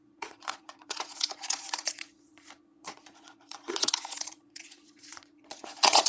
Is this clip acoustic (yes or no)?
no